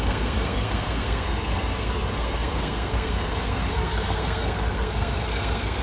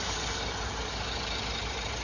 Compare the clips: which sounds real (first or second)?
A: second